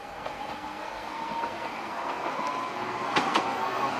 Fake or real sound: fake